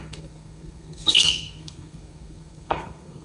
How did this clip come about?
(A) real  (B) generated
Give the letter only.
B